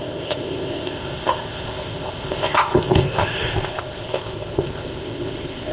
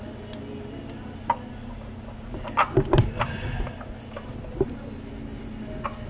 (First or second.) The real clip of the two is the second